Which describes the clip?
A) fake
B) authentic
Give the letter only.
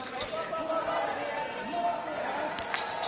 B